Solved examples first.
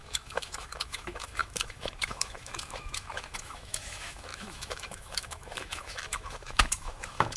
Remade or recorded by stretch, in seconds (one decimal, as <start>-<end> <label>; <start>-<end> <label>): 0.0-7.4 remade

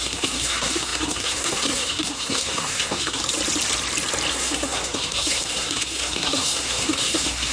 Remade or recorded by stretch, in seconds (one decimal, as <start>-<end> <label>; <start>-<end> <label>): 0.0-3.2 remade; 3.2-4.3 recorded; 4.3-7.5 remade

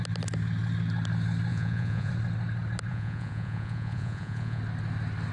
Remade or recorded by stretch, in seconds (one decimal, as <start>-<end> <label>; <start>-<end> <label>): 0.0-1.5 recorded; 1.5-2.1 remade; 2.1-2.9 recorded; 2.9-4.6 remade; 4.6-5.3 recorded

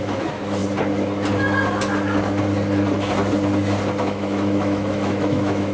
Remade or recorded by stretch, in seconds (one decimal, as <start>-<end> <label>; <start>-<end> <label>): 0.0-0.6 remade; 0.6-4.0 recorded; 4.0-5.7 remade